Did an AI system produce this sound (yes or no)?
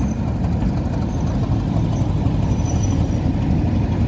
no